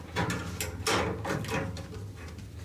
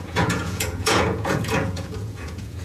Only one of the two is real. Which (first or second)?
first